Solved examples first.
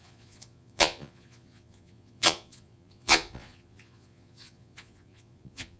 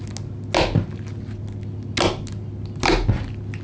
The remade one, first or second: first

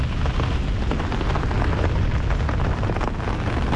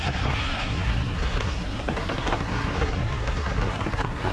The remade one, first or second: second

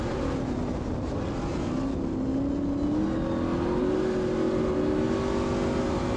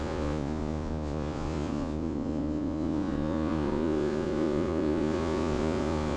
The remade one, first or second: second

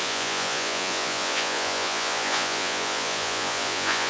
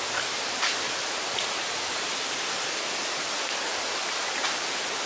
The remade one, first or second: first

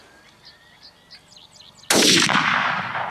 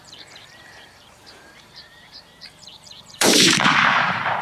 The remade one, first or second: second